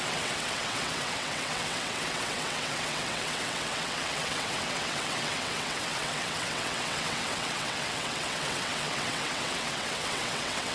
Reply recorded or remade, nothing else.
remade